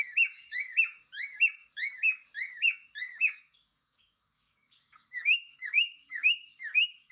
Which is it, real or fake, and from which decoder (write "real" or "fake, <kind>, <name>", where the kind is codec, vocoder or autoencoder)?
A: fake, codec, DAC